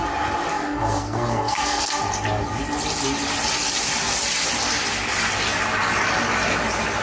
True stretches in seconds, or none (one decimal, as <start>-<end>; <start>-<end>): 0.0-0.5; 2.0-7.0